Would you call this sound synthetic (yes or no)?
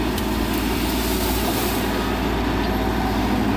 no